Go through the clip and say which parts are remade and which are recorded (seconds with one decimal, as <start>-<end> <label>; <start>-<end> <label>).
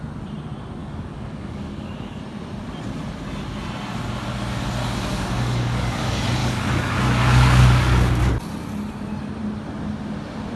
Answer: 0.0-0.8 recorded; 0.8-2.2 remade; 2.2-4.8 recorded; 4.8-6.0 remade; 6.0-6.4 recorded; 6.4-8.3 remade; 8.3-10.6 recorded